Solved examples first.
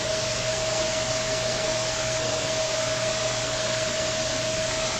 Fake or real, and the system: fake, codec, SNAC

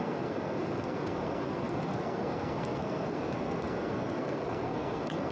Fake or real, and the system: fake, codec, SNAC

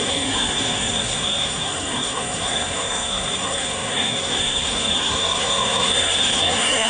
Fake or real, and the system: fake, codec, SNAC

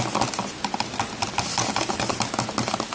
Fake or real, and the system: real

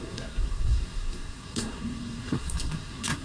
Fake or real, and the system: fake, codec, SNAC